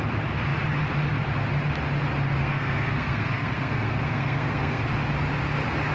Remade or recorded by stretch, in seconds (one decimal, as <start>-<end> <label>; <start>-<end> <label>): 0.0-2.4 recorded; 2.4-4.8 remade; 4.8-5.9 recorded